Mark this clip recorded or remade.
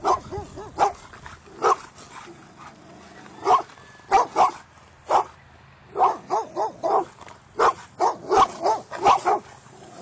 recorded